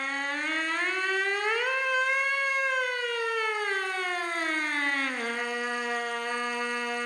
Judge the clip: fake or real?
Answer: real